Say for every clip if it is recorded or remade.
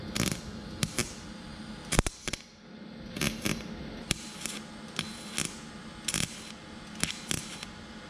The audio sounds recorded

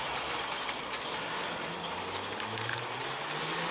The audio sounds recorded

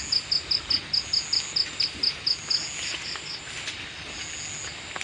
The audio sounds recorded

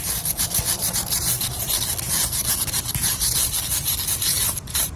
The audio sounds remade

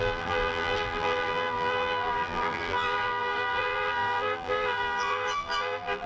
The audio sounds remade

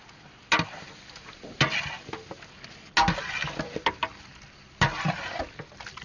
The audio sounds recorded